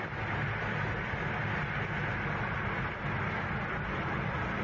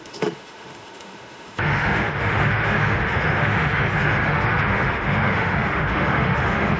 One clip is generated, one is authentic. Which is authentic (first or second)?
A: first